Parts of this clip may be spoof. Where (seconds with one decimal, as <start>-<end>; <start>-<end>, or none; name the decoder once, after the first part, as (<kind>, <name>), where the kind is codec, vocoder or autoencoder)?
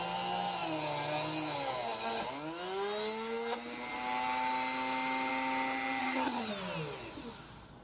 6.0-6.5 (vocoder, HiFi-GAN)